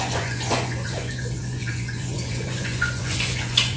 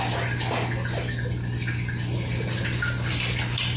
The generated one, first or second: first